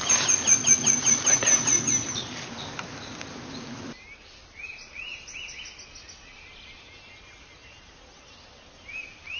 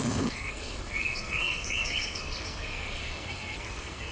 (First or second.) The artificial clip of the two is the second